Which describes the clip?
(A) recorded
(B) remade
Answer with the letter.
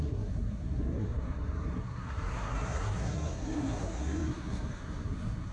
B